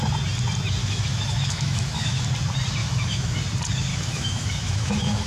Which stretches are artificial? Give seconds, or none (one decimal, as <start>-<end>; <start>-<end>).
0.8-2.2; 2.8-3.4; 3.9-5.3